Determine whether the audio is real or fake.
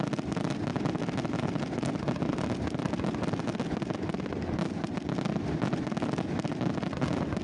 real